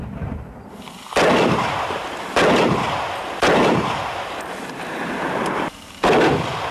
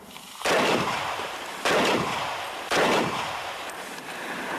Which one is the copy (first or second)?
second